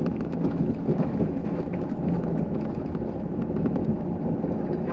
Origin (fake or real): fake